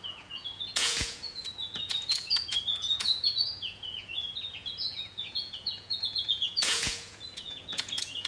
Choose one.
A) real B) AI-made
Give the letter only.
B